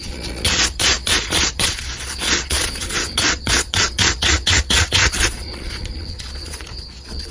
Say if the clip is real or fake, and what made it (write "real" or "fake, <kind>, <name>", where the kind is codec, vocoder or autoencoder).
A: fake, vocoder, Vocos